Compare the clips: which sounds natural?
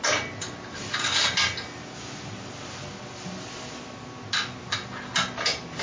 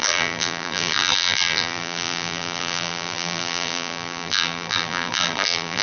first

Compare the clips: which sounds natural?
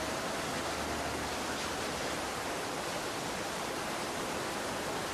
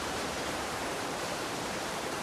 first